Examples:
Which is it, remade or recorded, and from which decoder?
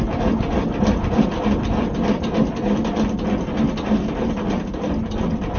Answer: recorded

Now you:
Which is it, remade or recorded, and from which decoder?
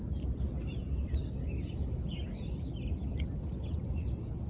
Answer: recorded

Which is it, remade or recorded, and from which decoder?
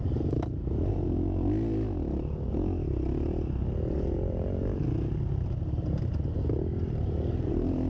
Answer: recorded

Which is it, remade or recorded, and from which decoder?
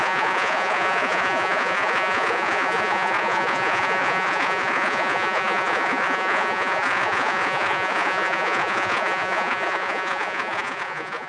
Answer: remade, vocoder, Vocos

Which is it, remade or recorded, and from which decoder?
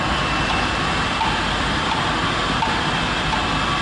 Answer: recorded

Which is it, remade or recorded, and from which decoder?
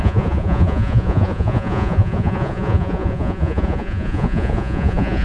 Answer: remade, vocoder, Vocos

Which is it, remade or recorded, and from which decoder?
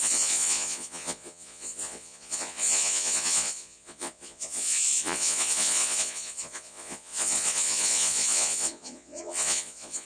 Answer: remade, vocoder, Vocos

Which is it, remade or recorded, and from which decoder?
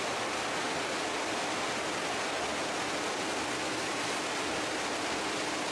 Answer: recorded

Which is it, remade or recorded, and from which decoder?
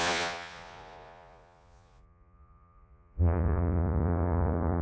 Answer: remade, vocoder, Vocos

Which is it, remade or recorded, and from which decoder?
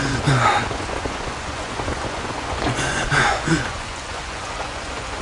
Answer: remade, vocoder, Vocos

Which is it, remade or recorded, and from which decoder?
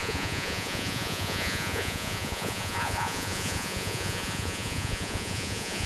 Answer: remade, vocoder, Vocos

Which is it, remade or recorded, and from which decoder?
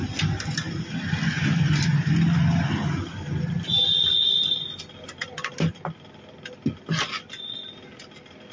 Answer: recorded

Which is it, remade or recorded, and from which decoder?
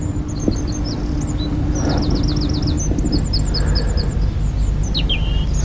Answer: recorded